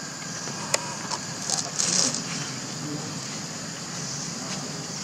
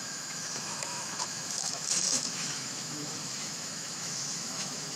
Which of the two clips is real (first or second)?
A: first